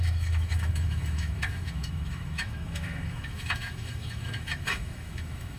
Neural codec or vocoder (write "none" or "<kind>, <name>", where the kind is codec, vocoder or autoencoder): autoencoder, DAC-VAE